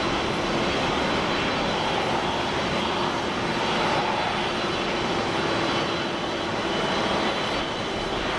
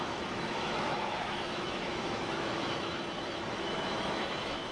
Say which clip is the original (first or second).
first